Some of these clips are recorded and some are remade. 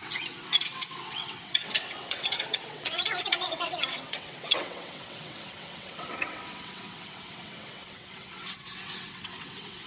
remade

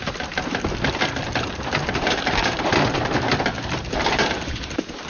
recorded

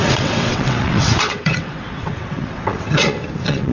remade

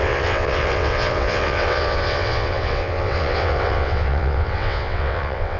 remade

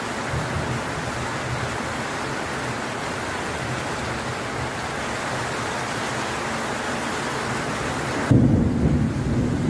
recorded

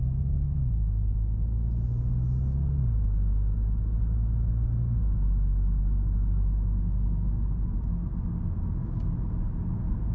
recorded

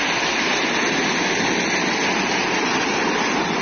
recorded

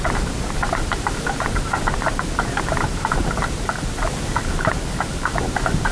recorded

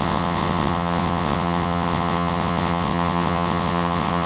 remade